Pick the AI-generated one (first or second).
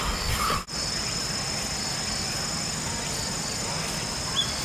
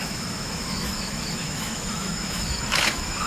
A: second